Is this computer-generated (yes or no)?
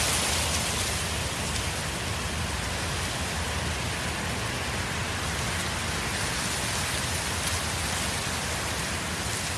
no